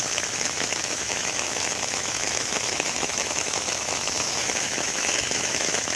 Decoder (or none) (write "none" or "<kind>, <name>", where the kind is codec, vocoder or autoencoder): autoencoder, DAC-VAE